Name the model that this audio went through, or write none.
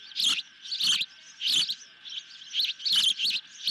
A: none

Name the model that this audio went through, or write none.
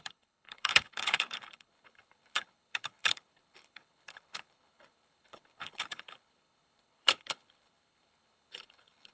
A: codec, HILCodec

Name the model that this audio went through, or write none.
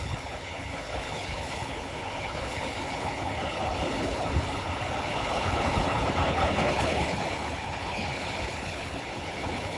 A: codec, HILCodec